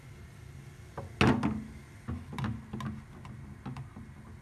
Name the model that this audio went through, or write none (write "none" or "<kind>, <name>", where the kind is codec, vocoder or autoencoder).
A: none